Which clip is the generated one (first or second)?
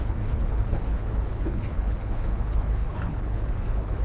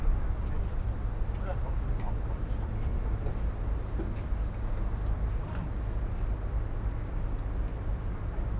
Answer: first